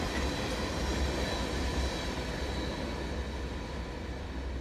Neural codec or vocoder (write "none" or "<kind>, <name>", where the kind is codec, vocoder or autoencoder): none